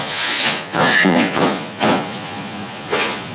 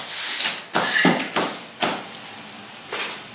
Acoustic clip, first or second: second